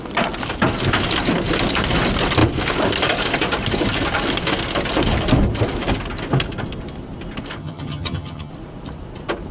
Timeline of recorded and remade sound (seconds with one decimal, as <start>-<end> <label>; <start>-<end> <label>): 0.0-7.6 recorded; 7.6-8.5 remade; 8.5-9.5 recorded